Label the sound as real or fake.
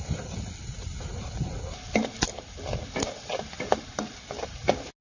real